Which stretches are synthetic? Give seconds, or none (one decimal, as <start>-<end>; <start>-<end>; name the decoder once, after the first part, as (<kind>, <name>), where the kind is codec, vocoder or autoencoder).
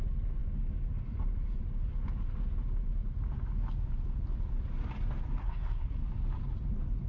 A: 5.4-6.0 (codec, SNAC)